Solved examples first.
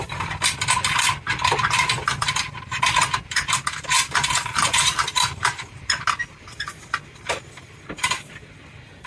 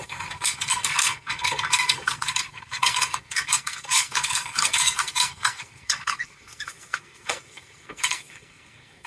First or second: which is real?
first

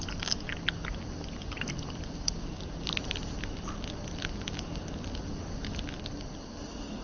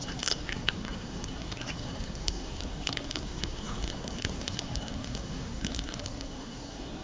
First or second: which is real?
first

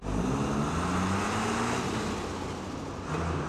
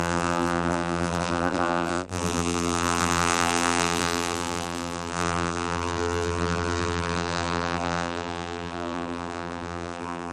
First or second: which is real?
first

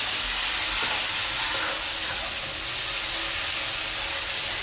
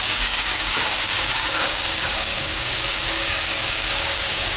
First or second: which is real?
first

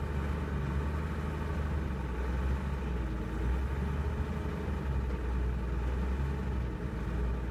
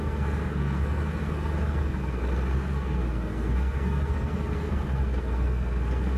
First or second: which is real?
first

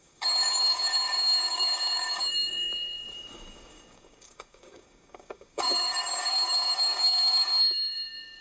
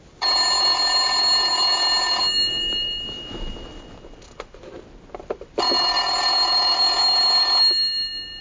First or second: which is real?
second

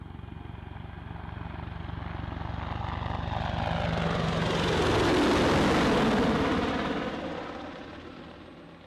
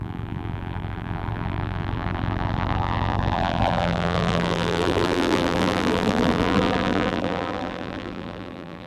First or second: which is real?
first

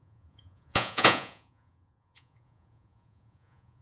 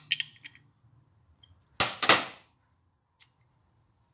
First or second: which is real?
second